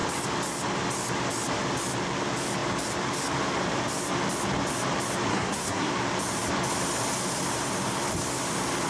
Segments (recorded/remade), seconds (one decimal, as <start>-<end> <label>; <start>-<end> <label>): 0.0-5.3 recorded; 5.3-5.9 remade; 5.9-8.9 recorded